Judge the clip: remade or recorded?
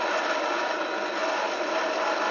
recorded